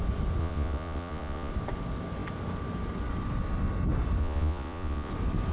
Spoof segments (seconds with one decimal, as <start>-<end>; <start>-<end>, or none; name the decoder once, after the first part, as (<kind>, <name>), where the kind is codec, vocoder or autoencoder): 0.4-1.5 (vocoder, Vocos); 4.2-5.1